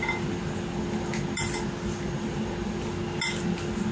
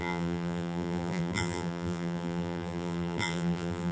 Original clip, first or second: first